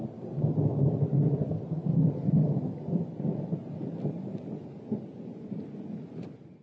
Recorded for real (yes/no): yes